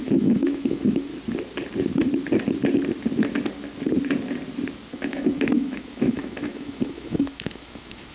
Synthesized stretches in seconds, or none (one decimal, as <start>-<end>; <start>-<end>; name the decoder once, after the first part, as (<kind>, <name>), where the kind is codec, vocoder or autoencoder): 0.0-1.1 (autoencoder, DAC-VAE); 4.9-8.1